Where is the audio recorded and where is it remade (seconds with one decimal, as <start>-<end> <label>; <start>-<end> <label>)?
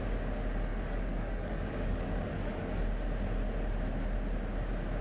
0.0-0.7 recorded; 0.7-2.8 remade; 2.8-5.0 recorded